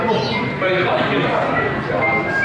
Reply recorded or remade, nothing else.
recorded